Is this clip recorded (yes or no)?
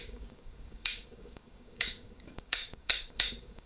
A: no